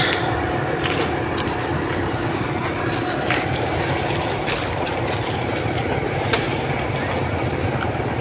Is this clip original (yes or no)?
yes